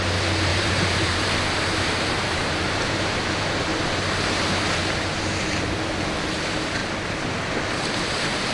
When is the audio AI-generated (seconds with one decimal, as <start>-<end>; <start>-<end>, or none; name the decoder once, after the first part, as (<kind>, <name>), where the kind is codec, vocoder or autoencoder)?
0.5-5.5 (vocoder, BigVGAN v2); 6.8-7.5